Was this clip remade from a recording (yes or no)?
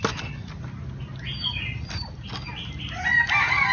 no